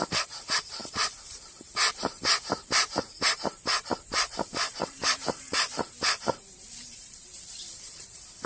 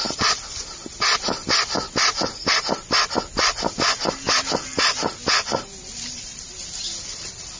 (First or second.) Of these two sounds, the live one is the second